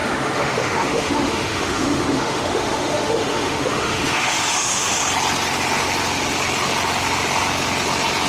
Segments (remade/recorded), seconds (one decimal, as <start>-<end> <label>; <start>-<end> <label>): 0.0-5.0 remade; 5.0-8.3 recorded

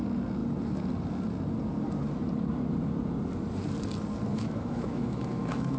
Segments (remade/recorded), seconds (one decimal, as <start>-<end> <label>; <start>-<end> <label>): 0.0-4.3 recorded; 4.3-5.8 remade

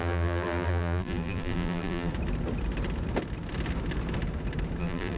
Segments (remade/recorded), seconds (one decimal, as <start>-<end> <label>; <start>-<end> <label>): 0.0-2.1 remade; 2.1-4.8 recorded; 4.8-5.2 remade

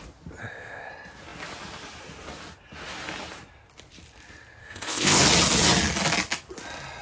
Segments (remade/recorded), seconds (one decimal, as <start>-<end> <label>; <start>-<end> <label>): 0.0-0.4 recorded; 0.4-0.9 remade; 0.9-4.6 recorded; 4.6-5.2 remade; 5.2-7.0 recorded

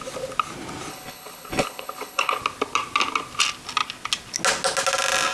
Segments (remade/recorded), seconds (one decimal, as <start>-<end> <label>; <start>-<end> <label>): 0.0-0.9 recorded; 0.9-2.4 remade; 2.4-5.3 recorded